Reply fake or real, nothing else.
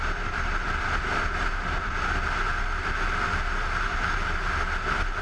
real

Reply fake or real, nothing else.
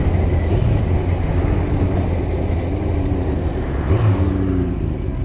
real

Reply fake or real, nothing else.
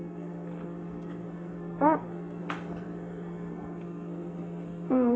fake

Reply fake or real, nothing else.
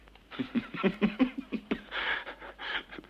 fake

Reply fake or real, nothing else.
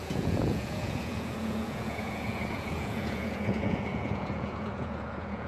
fake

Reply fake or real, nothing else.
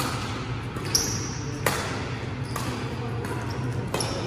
real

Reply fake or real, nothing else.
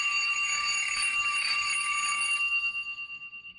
fake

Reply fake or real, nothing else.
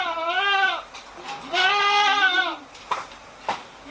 real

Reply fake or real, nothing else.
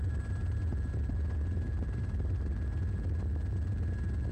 real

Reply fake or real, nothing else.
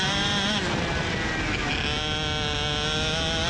real